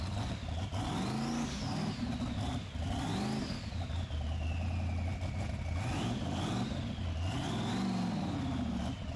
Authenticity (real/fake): real